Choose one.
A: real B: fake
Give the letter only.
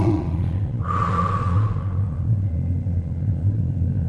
B